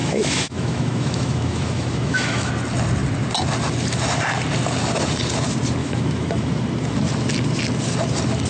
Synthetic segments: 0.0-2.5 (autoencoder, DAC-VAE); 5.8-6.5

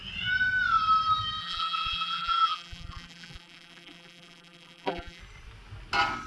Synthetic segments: 1.4-5.2 (vocoder, BigVGAN v2)